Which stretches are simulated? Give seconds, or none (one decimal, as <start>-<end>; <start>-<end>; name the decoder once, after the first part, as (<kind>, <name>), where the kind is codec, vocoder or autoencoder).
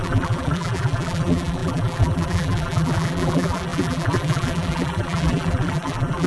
0.0-6.3 (vocoder, BigVGAN v2)